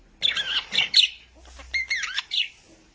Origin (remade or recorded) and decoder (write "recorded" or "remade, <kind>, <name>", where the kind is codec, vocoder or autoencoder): recorded